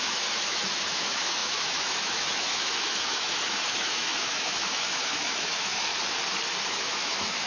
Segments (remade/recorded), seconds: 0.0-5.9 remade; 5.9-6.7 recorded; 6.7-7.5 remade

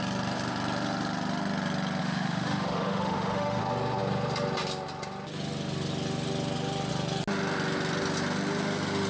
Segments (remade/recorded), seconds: 0.0-2.0 recorded; 2.0-3.6 remade; 3.6-9.1 recorded

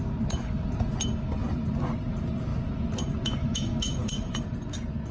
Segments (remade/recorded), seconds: 0.0-3.4 recorded; 3.4-3.9 remade; 3.9-5.1 recorded

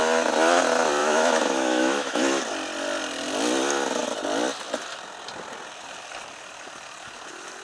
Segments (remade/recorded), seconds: 0.0-1.0 recorded; 1.0-2.4 remade; 2.4-7.6 recorded